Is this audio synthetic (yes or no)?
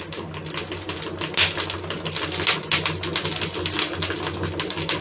no